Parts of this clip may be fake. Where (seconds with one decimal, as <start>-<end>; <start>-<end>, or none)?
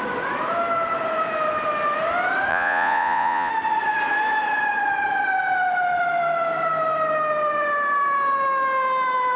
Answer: 2.5-3.5